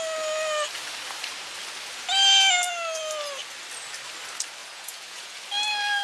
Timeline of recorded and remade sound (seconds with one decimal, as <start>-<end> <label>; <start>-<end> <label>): 0.0-4.6 recorded; 4.6-5.4 remade; 5.4-6.0 recorded